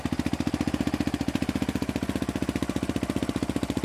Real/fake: fake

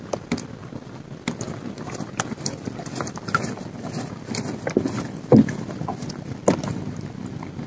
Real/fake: real